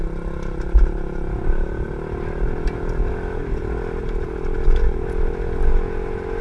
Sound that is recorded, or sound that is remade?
recorded